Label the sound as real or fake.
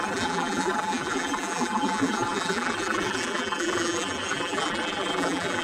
fake